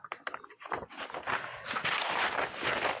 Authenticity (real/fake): real